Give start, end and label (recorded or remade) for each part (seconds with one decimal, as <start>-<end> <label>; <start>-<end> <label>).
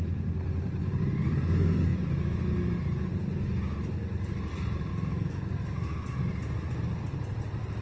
0.0-1.9 recorded; 1.9-2.5 remade; 2.5-4.9 recorded; 4.9-6.2 remade; 6.2-7.8 recorded